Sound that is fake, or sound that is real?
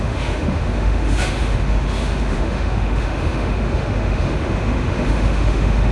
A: fake